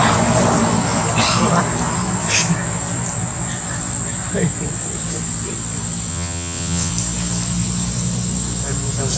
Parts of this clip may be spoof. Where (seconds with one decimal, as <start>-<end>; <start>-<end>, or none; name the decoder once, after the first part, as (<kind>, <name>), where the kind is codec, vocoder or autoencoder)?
6.1-6.9 (vocoder, WaveNeXt)